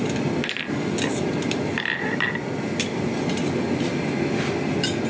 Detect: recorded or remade recorded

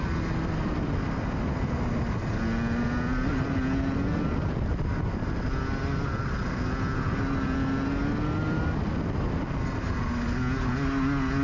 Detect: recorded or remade recorded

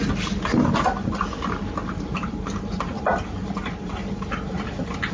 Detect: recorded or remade recorded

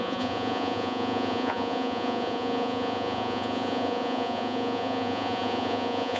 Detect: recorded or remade remade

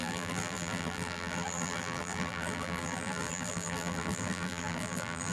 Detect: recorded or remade remade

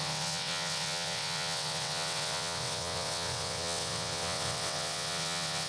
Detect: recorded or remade remade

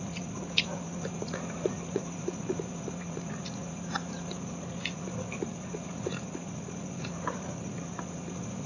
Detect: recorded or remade remade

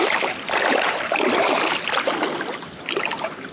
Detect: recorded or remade recorded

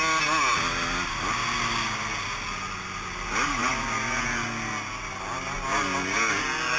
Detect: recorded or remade recorded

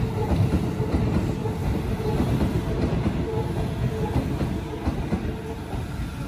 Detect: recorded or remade recorded